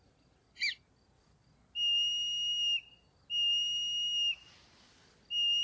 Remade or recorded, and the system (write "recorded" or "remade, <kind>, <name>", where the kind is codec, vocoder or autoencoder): recorded